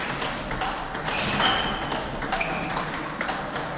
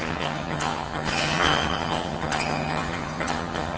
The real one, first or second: first